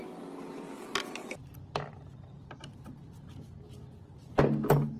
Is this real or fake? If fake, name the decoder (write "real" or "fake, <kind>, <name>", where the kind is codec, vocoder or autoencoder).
real